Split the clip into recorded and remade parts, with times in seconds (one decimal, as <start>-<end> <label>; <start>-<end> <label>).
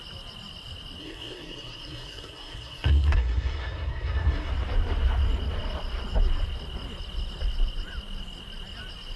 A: 0.0-1.0 recorded; 1.0-4.5 remade; 4.5-9.2 recorded